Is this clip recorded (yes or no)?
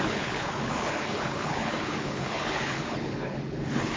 no